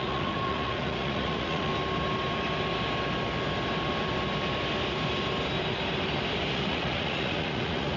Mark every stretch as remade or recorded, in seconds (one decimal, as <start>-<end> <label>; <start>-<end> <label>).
0.0-1.7 remade; 1.7-6.5 recorded; 6.5-8.0 remade